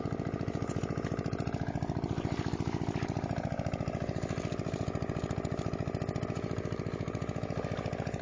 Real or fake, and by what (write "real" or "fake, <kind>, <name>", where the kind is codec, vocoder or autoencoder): real